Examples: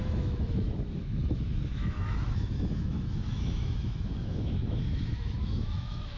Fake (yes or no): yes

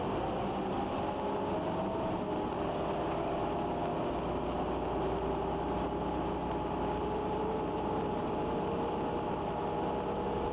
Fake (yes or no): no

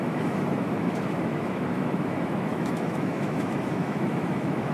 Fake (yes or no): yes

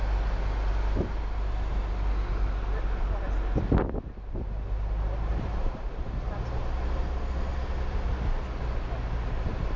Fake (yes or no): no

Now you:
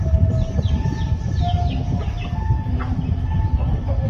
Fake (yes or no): no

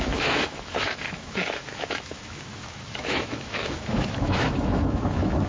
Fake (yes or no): yes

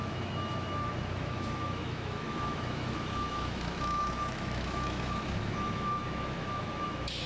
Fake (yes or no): yes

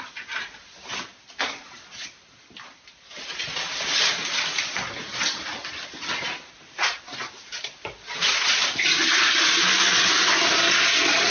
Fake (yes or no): no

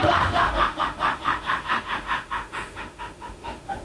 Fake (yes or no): yes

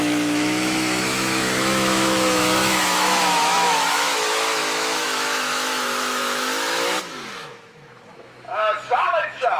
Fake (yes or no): yes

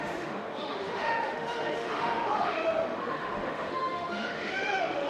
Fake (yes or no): yes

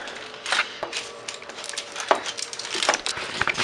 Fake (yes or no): no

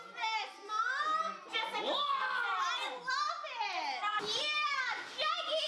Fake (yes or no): no